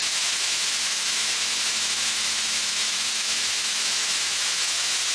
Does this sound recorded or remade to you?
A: remade